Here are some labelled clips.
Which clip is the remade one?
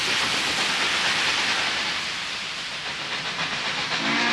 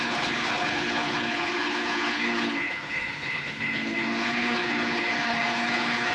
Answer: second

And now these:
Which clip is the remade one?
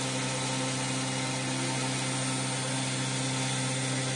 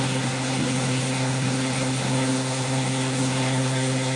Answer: second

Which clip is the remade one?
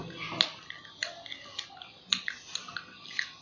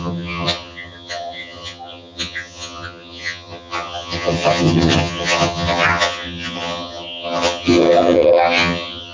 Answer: second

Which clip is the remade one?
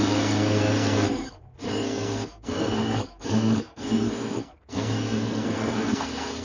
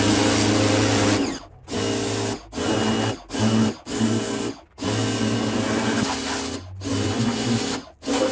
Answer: first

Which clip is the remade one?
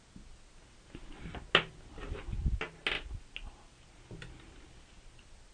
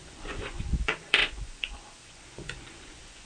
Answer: second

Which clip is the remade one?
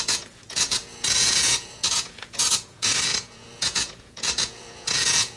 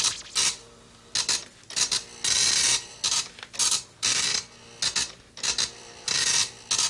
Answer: first